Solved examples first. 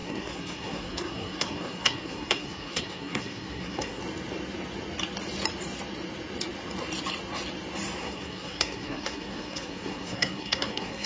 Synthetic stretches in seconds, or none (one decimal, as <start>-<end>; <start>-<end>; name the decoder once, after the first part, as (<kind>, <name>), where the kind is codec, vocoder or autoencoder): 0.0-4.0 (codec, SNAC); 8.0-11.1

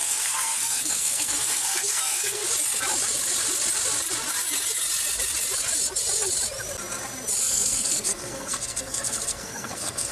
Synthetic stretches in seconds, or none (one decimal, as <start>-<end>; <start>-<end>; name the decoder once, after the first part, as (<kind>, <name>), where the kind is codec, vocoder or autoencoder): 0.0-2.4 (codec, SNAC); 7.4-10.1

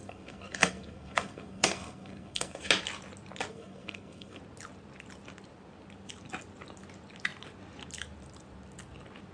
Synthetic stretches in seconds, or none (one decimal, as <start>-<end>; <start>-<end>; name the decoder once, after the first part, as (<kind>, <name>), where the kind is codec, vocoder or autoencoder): 0.0-2.7 (codec, SNAC); 3.5-4.4